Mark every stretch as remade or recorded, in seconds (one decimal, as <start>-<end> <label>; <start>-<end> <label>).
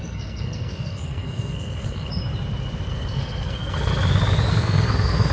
0.0-2.2 remade; 2.2-2.9 recorded; 2.9-3.9 remade; 3.9-4.5 recorded; 4.5-5.3 remade